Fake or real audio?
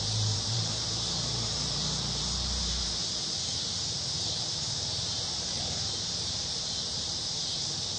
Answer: fake